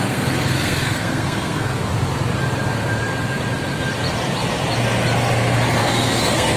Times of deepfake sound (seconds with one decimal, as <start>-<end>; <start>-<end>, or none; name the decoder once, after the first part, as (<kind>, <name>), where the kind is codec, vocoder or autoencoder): 0.0-1.8 (codec, SNAC); 5.8-6.6